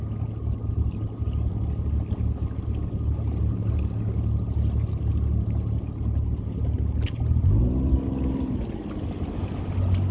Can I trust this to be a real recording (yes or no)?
yes